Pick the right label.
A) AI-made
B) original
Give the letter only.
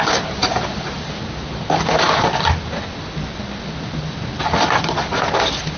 B